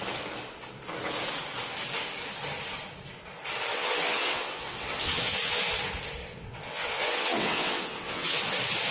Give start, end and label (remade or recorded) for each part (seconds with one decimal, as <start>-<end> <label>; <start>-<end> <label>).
0.0-3.7 recorded; 3.7-5.8 remade; 5.8-6.2 recorded; 6.2-8.4 remade; 8.4-8.9 recorded